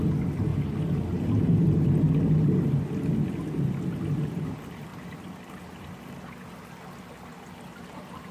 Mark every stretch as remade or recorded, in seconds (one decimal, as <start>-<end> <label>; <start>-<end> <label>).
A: 0.0-8.3 recorded